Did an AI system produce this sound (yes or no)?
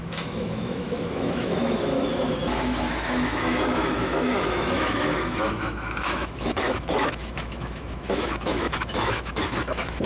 yes